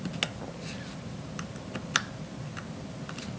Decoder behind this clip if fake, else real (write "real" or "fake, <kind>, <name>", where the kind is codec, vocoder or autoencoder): real